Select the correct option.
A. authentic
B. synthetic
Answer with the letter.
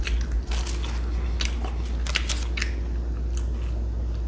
A